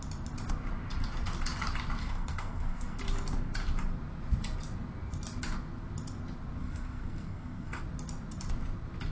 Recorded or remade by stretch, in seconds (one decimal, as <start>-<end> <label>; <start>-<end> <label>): 0.0-2.0 recorded; 2.0-3.0 remade; 3.0-6.6 recorded; 6.6-7.8 remade; 7.8-9.1 recorded